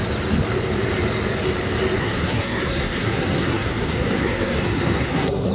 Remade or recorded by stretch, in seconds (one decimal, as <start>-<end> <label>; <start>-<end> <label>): 0.0-2.0 recorded; 2.0-5.5 remade